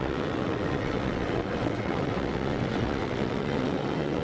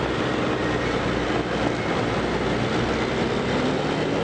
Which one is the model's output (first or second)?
first